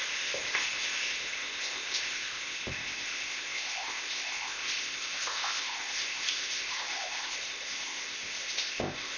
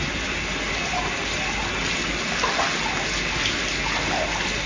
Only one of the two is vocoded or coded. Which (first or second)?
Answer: first